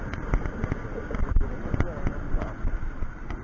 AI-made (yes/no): yes